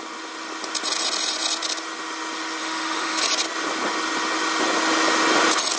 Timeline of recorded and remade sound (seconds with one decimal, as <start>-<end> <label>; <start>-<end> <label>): 0.0-2.6 recorded; 2.6-3.2 remade; 3.2-5.8 recorded